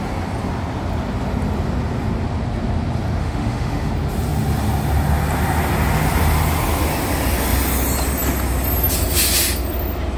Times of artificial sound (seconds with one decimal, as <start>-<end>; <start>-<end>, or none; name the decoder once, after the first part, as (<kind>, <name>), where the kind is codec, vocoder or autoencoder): 3.2-3.9 (autoencoder, DAC-VAE)

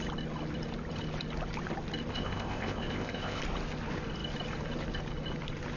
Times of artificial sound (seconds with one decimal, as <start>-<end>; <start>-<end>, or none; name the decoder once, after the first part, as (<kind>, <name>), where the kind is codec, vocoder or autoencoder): 2.1-3.4 (codec, ZipCodec)

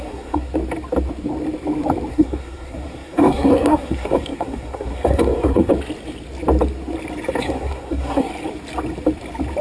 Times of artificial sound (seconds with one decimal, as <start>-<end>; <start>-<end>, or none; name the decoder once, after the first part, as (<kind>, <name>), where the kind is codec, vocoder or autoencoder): 0.0-0.5 (codec, SNAC); 2.1-5.7; 7.4-8.3

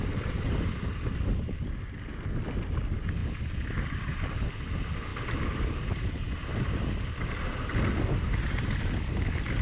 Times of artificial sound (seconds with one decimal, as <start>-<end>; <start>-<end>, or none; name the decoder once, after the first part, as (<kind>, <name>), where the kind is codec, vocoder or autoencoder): none